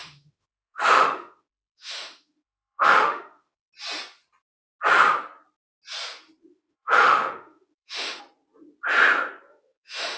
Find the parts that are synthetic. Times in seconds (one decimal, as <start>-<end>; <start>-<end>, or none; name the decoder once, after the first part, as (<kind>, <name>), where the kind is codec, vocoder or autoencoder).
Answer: 0.0-3.7 (autoencoder, DAC-VAE); 6.5-8.2; 9.5-10.2